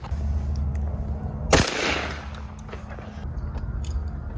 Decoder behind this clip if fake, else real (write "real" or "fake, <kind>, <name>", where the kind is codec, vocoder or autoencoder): real